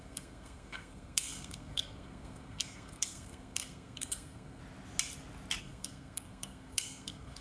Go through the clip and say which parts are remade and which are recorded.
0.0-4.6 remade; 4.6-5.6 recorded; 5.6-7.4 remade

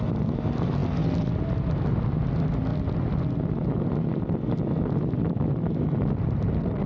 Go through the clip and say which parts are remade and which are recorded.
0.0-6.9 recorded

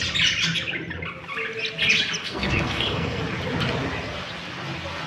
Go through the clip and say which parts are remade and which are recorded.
0.0-2.2 recorded; 2.2-3.2 remade; 3.2-5.1 recorded